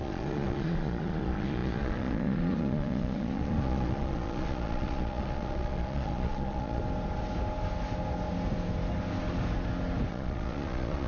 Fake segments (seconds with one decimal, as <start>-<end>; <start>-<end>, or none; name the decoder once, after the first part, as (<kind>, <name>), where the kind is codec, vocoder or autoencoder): 0.0-6.8 (vocoder, Vocos); 10.1-11.1